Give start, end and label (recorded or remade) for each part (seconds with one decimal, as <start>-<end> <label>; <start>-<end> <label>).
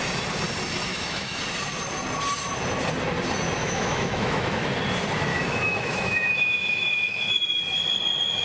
0.0-0.9 recorded; 0.9-1.4 remade; 1.4-3.6 recorded; 3.6-4.6 remade; 4.6-5.3 recorded; 5.3-7.6 remade; 7.6-8.4 recorded